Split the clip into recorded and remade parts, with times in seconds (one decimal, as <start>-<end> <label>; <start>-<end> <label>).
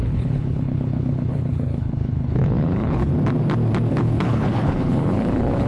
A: 0.0-3.1 remade; 3.1-3.9 recorded; 3.9-5.7 remade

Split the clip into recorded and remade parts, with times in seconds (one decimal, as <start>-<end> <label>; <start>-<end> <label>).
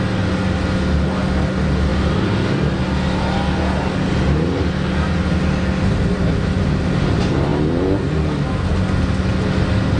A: 0.0-10.0 recorded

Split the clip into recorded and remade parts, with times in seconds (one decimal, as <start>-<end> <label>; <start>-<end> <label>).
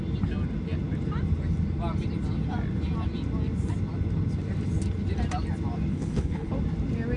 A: 0.0-5.9 recorded; 5.9-6.5 remade; 6.5-7.2 recorded